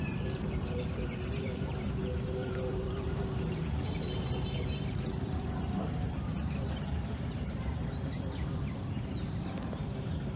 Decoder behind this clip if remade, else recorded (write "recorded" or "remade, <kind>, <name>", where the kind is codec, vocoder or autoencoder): remade, vocoder, BigVGAN v2